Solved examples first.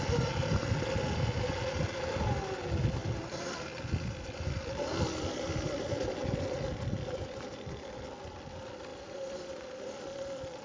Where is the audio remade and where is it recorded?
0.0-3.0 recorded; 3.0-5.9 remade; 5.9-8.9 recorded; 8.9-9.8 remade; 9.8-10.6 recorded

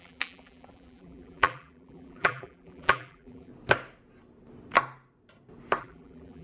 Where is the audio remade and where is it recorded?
0.0-3.5 remade; 3.5-5.8 recorded; 5.8-6.4 remade

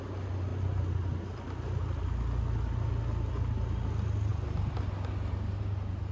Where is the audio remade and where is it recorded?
0.0-6.1 recorded

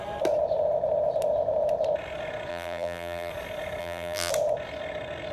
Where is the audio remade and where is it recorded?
0.0-2.5 recorded; 2.5-3.3 remade; 3.3-3.8 recorded; 3.8-4.3 remade; 4.3-5.3 recorded

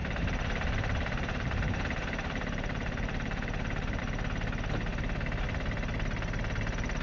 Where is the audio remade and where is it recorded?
0.0-4.0 remade; 4.0-7.0 recorded